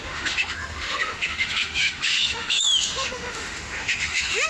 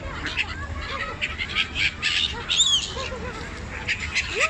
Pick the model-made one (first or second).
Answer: first